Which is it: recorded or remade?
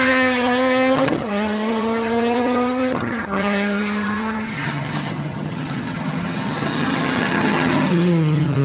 remade